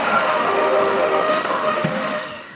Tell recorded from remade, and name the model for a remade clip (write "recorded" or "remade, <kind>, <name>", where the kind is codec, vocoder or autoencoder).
remade, autoencoder, DAC-VAE